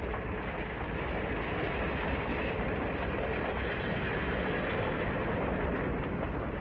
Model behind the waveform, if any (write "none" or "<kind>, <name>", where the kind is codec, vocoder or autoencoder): none